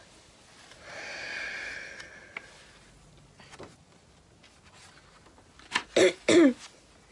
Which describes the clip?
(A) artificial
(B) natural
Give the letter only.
B